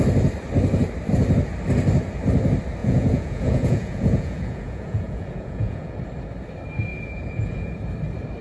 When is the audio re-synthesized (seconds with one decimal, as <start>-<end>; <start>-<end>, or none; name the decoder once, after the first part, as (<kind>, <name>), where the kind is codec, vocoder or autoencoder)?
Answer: 2.8-6.0 (vocoder, Vocos); 6.9-7.8